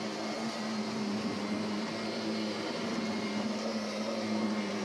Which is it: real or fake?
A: real